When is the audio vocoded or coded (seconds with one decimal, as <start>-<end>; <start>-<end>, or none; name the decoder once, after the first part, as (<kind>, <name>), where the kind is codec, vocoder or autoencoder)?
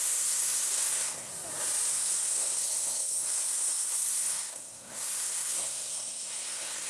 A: 0.0-1.3 (codec, SNAC); 1.9-6.9